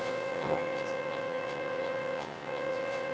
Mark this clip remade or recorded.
remade